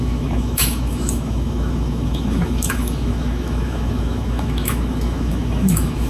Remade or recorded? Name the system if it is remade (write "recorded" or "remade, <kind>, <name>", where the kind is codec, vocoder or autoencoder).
remade, autoencoder, DAC-VAE